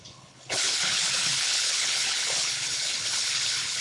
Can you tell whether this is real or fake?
fake